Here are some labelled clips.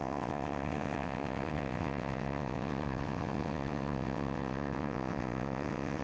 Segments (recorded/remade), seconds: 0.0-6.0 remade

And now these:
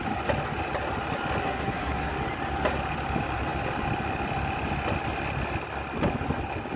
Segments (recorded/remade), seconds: 0.0-1.4 recorded; 1.4-2.1 remade; 2.1-6.8 recorded